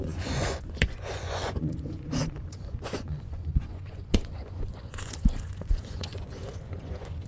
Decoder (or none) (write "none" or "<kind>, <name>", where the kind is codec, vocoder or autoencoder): vocoder, Vocos